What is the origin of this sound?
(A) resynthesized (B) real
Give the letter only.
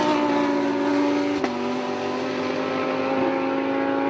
B